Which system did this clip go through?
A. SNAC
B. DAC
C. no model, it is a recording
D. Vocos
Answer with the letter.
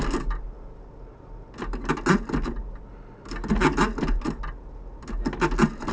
C